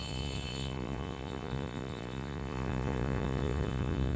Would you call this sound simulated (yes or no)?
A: yes